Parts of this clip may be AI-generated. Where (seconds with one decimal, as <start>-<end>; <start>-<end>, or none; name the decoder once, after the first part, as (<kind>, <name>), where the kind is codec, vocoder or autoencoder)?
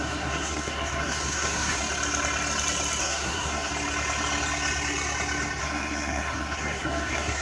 0.0-1.8 (codec, SNAC); 3.0-3.7; 5.6-7.4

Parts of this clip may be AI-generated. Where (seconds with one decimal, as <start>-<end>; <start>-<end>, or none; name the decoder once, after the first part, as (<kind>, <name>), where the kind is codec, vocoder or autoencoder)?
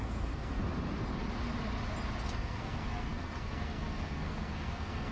0.0-0.6 (codec, SNAC); 2.3-5.1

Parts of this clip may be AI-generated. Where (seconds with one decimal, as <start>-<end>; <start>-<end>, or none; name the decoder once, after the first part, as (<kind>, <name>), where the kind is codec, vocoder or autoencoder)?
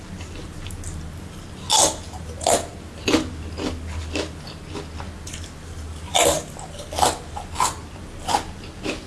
none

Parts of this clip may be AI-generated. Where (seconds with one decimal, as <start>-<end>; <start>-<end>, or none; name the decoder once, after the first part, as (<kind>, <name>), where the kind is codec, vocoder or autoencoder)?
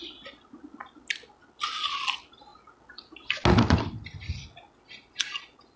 none